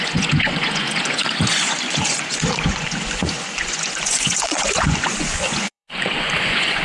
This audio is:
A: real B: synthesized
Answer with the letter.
B